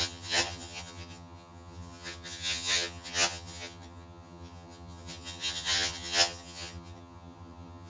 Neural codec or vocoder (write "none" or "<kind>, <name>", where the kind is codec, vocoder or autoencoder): vocoder, HiFi-GAN